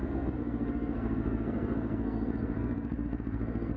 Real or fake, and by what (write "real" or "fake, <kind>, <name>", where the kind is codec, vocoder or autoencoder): fake, codec, SNAC